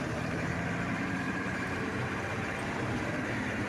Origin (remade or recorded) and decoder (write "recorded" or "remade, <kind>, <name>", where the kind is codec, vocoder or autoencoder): remade, vocoder, BigVGAN v2